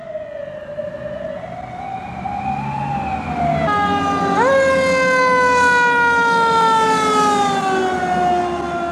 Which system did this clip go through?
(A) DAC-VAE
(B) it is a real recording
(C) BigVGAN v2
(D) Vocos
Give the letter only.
B